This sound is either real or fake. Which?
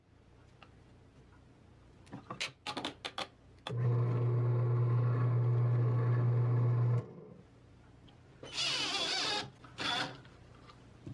real